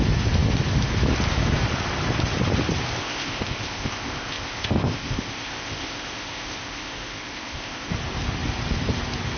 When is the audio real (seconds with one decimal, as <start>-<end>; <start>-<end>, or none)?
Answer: 0.0-3.0; 7.9-9.4